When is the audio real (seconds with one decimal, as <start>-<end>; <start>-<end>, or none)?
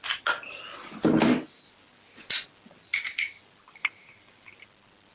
0.0-5.1